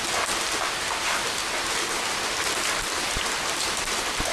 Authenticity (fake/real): real